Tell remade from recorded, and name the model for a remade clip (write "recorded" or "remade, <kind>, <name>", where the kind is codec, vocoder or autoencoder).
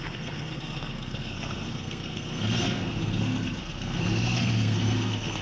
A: remade, codec, SNAC